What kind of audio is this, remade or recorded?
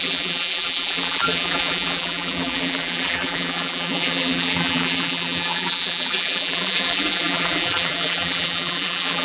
remade